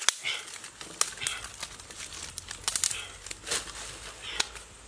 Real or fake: real